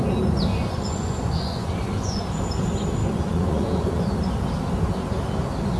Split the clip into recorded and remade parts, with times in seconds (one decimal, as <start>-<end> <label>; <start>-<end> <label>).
0.0-0.5 recorded; 0.5-2.2 remade; 2.2-3.0 recorded; 3.0-4.0 remade; 4.0-5.8 recorded